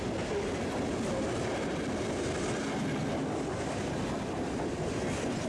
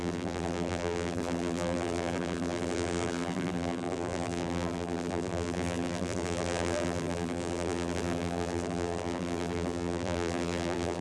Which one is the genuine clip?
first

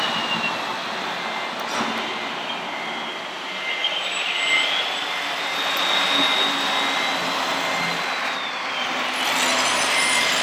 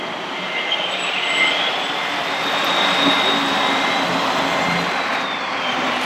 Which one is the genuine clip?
first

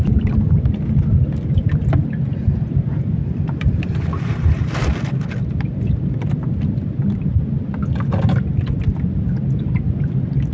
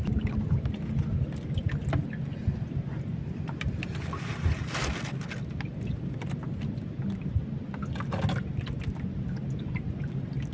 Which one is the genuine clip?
second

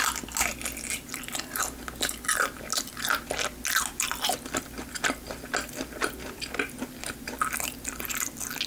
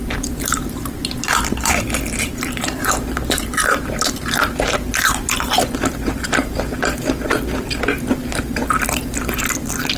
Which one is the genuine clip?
first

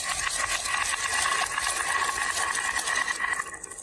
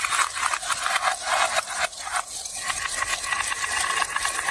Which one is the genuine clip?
first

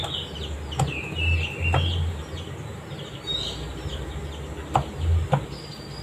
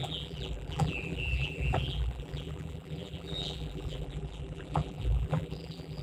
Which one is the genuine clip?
first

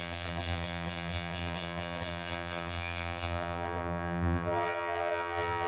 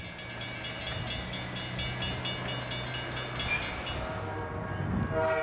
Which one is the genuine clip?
second